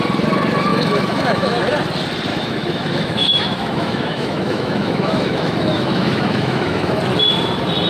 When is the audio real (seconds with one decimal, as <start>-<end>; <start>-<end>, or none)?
0.0-0.7; 1.6-2.3; 7.0-7.9